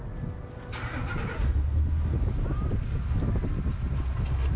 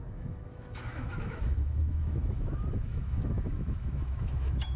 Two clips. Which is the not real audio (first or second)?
second